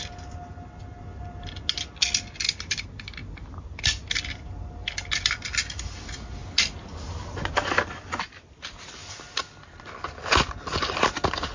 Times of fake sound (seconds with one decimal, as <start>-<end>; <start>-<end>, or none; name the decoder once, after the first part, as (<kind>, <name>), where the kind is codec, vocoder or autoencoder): none